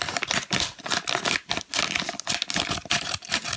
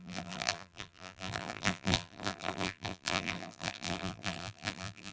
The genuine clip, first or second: first